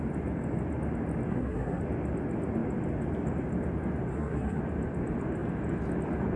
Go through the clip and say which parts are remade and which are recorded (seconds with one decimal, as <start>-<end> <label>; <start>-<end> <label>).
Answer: 0.0-1.3 recorded; 1.3-1.8 remade; 1.8-4.1 recorded; 4.1-4.6 remade; 4.6-6.4 recorded

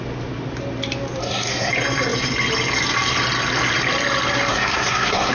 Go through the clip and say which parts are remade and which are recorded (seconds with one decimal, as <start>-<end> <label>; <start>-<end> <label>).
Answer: 0.0-1.2 recorded; 1.2-1.7 remade; 1.7-4.5 recorded; 4.5-5.3 remade

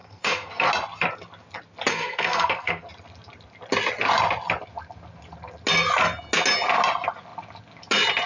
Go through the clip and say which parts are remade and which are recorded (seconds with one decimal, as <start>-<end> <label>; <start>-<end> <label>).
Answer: 0.0-0.7 remade; 0.7-1.9 recorded; 1.9-2.9 remade; 2.9-8.3 recorded

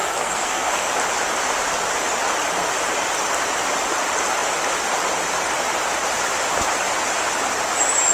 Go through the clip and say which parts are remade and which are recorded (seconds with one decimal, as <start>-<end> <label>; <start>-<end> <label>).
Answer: 0.0-0.9 remade; 0.9-8.1 recorded

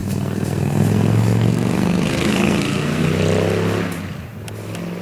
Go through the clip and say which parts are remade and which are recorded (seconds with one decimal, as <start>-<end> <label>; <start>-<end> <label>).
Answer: 0.0-3.0 remade; 3.0-5.0 recorded